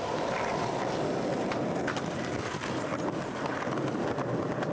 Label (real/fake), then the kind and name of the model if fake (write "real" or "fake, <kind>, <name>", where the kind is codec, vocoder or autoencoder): real